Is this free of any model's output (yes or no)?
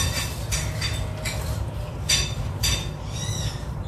no